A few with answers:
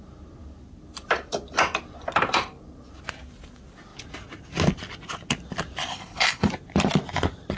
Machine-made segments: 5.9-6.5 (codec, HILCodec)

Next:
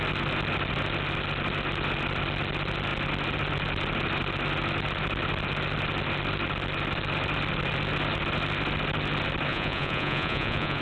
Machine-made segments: 9.5-10.8 (vocoder, Vocos)

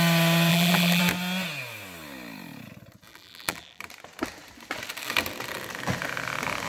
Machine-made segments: 0.5-1.0 (vocoder, BigVGAN v2); 3.1-3.8